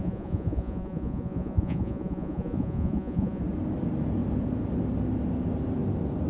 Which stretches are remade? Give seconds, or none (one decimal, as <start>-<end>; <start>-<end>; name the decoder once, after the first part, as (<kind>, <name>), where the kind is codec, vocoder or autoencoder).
0.0-3.4 (vocoder, Vocos)